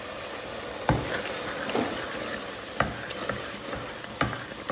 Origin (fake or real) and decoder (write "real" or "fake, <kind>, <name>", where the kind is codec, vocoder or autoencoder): real